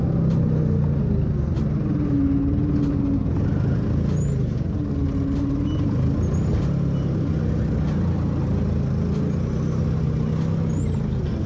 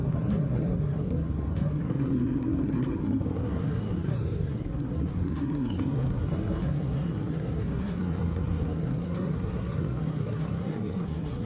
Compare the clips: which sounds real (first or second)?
first